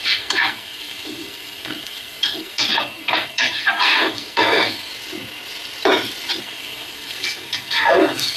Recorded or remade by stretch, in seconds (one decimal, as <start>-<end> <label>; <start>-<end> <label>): 0.0-4.9 remade; 4.9-6.4 recorded; 6.4-8.4 remade